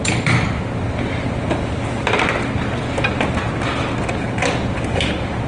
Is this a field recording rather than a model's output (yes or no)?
yes